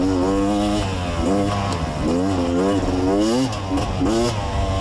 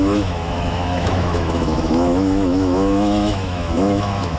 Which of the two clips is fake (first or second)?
second